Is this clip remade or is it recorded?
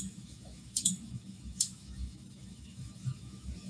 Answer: remade